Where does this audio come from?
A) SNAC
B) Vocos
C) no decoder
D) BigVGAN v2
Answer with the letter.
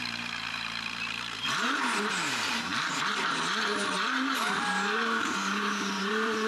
D